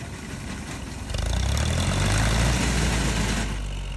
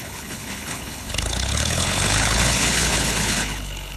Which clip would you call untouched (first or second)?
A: first